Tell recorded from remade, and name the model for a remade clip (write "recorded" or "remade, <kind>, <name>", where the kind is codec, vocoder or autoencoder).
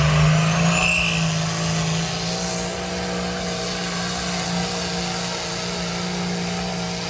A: recorded